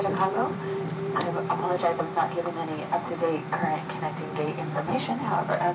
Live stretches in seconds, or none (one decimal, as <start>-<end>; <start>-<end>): 2.0-4.3; 5.0-5.7